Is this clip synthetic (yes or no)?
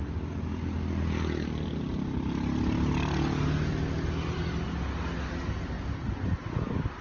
no